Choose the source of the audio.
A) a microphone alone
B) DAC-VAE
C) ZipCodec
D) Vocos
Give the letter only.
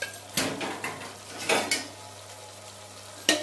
A